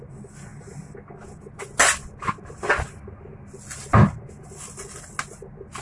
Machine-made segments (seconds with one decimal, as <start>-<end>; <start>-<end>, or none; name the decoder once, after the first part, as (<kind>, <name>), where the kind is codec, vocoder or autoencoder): none